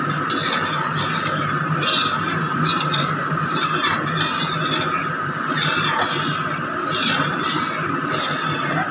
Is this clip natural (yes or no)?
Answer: yes